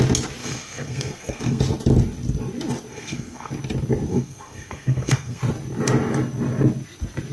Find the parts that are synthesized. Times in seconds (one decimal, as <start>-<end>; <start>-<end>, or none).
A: 0.4-1.6; 2.9-3.5; 4.1-5.4